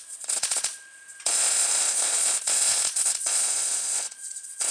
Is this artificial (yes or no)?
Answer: yes